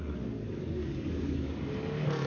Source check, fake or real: fake